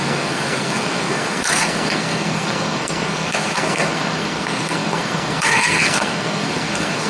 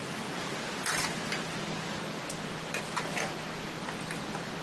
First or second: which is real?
second